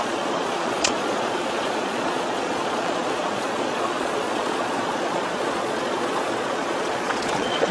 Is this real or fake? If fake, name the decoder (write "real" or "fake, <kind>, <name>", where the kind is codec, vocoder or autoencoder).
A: fake, vocoder, Vocos